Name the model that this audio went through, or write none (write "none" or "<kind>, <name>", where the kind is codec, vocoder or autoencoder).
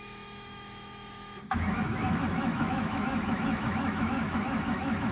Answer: autoencoder, DAC-VAE